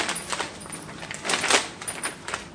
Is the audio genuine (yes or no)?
yes